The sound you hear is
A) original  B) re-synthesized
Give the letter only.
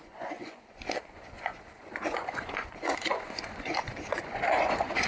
B